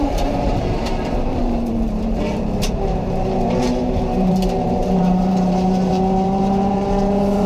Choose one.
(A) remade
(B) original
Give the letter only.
A